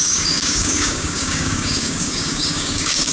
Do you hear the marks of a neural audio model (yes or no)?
yes